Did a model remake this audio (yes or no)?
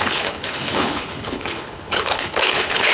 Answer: yes